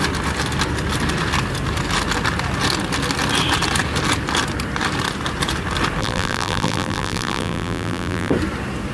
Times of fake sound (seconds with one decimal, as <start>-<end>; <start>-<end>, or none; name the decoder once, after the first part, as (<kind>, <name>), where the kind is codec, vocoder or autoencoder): 6.0-8.3 (vocoder, BigVGAN v2)